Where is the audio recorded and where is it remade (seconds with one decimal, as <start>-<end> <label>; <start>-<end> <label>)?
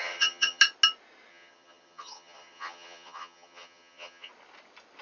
0.0-0.6 remade; 0.6-1.3 recorded; 1.3-4.3 remade; 4.3-5.0 recorded